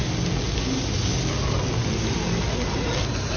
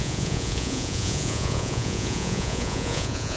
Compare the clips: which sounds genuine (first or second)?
first